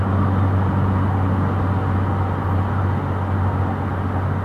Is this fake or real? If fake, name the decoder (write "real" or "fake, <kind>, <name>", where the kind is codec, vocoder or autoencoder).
real